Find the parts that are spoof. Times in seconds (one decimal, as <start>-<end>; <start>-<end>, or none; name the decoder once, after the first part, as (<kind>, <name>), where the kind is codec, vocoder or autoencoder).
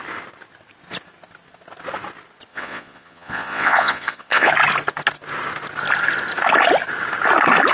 2.5-4.5 (vocoder, Vocos)